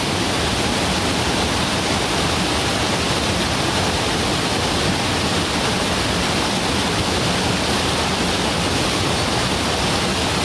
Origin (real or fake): real